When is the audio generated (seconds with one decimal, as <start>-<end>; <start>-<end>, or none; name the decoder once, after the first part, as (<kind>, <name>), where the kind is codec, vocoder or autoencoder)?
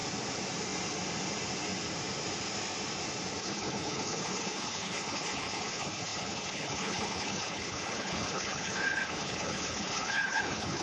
3.4-10.8 (codec, HILCodec)